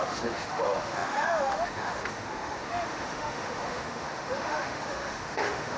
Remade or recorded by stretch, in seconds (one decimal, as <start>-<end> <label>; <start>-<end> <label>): 0.0-5.8 remade